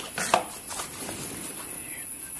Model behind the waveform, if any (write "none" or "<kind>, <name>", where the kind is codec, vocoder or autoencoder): none